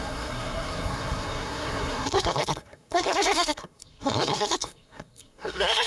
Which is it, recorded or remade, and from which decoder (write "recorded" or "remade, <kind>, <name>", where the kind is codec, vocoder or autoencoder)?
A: remade, codec, SNAC